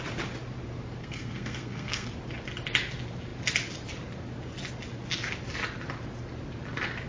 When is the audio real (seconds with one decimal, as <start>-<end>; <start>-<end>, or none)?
0.0-1.0; 2.1-7.1